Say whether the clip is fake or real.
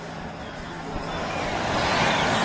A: real